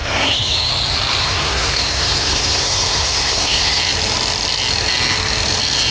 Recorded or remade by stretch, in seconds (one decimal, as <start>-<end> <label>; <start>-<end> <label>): 0.0-0.7 remade; 0.7-1.2 recorded; 1.2-3.8 remade; 3.8-5.9 recorded